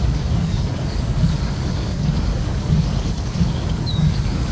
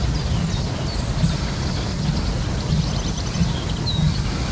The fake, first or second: first